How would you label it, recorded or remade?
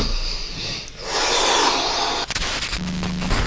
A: recorded